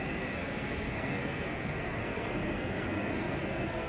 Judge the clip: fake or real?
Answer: fake